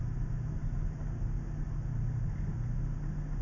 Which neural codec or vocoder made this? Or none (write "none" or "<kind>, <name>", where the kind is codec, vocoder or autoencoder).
none